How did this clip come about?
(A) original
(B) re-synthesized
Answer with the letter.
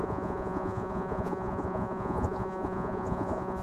B